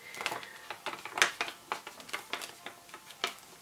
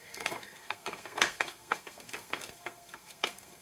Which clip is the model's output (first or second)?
second